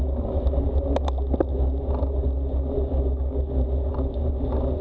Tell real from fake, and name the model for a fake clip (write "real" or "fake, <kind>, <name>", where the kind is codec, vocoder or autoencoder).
real